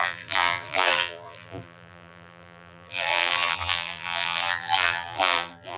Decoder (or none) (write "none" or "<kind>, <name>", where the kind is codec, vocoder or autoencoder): vocoder, BigVGAN v2